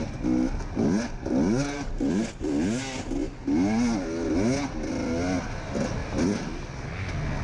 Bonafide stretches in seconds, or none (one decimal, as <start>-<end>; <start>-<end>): 0.0-7.4